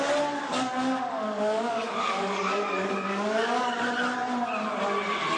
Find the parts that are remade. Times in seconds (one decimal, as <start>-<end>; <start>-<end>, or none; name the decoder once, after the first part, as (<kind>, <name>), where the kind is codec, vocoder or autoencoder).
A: 0.5-3.7 (codec, DAC)